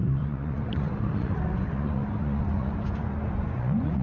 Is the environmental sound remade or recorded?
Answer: remade